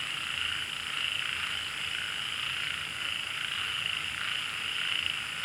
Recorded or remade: recorded